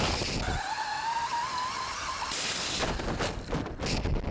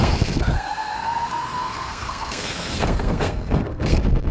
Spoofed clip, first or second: second